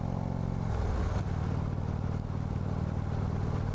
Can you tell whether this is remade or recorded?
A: recorded